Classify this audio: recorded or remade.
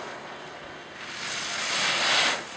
recorded